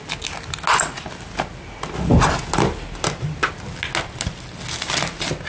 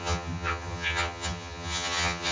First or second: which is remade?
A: second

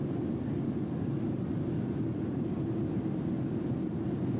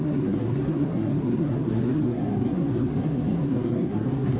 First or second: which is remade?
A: second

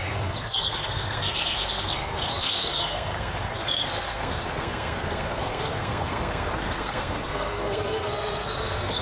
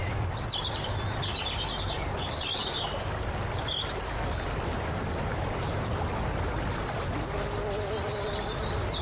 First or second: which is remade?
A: first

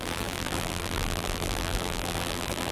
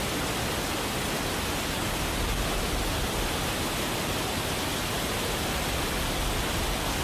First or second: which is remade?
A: first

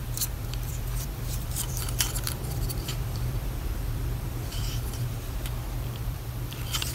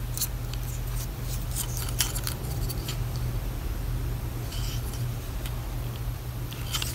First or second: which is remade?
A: first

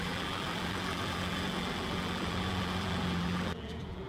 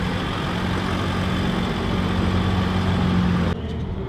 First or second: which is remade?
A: first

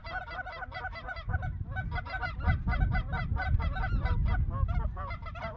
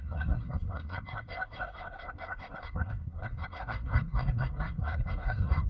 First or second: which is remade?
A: second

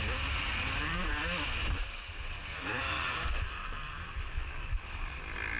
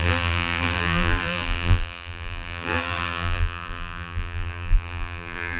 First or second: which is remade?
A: second